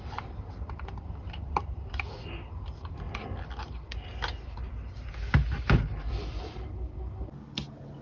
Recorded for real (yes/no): yes